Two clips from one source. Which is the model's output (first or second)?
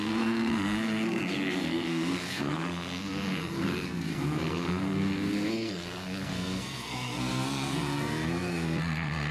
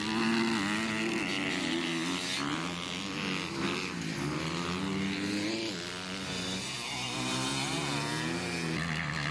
first